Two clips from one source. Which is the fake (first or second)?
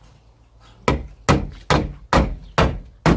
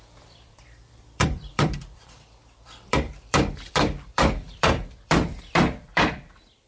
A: second